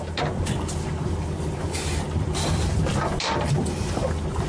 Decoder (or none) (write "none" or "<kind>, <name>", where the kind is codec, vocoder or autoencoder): none